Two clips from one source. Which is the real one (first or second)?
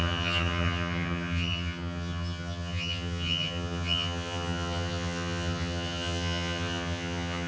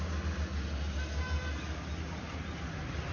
second